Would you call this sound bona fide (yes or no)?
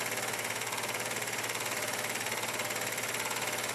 yes